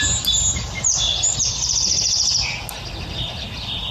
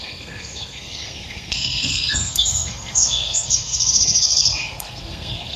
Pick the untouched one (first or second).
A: first